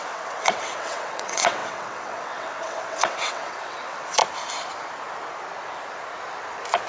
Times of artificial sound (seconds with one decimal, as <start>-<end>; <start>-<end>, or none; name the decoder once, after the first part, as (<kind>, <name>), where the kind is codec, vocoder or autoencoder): 0.0-4.2 (vocoder, WaveNeXt)